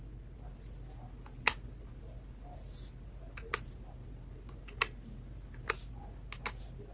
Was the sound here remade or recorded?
recorded